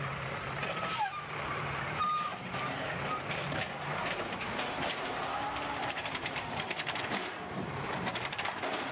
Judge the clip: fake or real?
fake